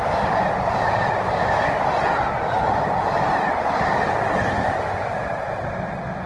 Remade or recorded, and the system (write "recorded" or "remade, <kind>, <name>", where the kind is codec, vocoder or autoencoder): recorded